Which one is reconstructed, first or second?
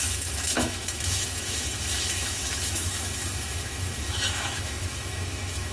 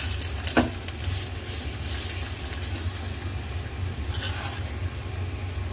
first